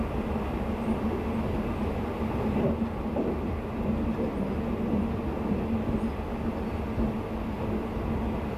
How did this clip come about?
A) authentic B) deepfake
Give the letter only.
A